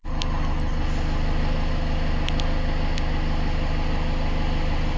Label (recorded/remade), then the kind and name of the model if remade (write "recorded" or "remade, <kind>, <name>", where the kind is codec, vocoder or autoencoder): recorded